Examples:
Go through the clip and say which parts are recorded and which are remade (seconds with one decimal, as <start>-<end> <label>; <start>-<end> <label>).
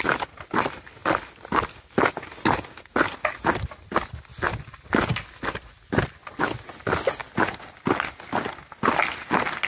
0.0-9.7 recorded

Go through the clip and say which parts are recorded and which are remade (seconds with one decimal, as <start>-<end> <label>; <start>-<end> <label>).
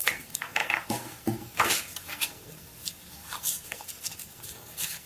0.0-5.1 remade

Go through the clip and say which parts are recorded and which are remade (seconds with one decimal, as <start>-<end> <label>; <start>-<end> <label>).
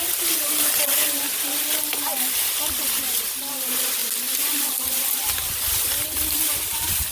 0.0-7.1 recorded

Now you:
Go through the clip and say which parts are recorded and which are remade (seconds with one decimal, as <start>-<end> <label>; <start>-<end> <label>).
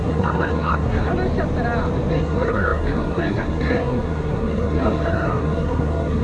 0.0-1.1 remade; 1.1-2.1 recorded; 2.1-6.2 remade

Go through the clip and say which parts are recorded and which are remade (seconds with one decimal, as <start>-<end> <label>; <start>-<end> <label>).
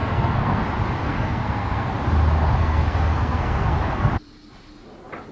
0.0-0.6 remade; 0.6-1.0 recorded; 1.0-1.9 remade; 1.9-2.6 recorded; 2.6-4.1 remade; 4.1-5.3 recorded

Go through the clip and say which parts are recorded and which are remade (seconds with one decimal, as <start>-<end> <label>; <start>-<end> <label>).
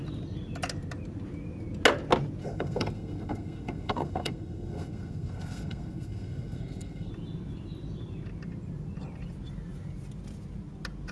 0.0-2.4 recorded; 2.4-7.1 remade; 7.1-11.1 recorded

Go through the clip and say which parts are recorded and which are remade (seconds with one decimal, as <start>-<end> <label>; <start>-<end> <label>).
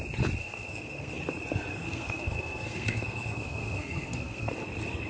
0.0-0.4 recorded; 0.4-1.2 remade; 1.2-1.7 recorded; 1.7-4.5 remade; 4.5-5.1 recorded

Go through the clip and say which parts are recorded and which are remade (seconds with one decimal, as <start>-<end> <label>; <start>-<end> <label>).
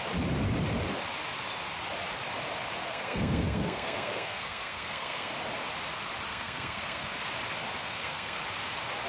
0.0-2.8 recorded; 2.8-5.3 remade; 5.3-6.3 recorded; 6.3-7.2 remade; 7.2-7.8 recorded; 7.8-8.4 remade; 8.4-9.1 recorded